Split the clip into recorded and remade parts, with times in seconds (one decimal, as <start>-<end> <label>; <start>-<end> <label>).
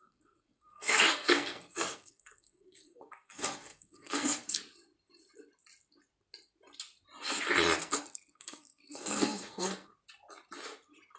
0.0-4.6 remade; 4.6-7.8 recorded; 7.8-9.9 remade; 9.9-11.2 recorded